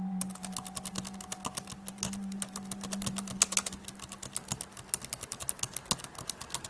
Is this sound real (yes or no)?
yes